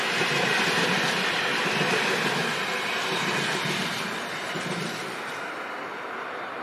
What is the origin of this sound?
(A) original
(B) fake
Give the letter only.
A